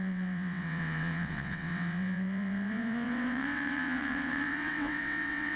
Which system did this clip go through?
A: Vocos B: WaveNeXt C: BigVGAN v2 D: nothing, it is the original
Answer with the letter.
B